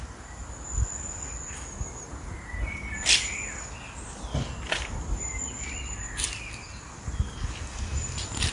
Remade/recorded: recorded